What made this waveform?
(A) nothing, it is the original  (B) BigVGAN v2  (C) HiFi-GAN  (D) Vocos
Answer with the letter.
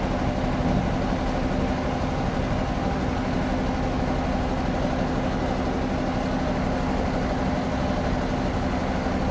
A